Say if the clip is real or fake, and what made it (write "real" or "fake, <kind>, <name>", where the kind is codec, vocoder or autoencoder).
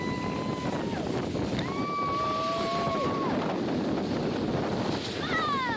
real